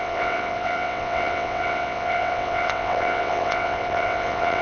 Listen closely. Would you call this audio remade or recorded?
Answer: remade